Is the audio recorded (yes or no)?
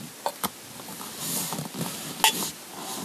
yes